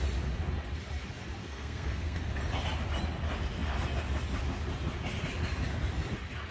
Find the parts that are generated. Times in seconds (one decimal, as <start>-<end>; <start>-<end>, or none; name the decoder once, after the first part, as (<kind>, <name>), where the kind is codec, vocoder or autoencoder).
1.4-2.2 (codec, SNAC)